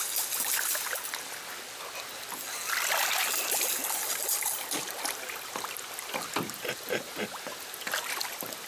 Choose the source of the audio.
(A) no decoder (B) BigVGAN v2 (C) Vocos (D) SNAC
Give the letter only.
A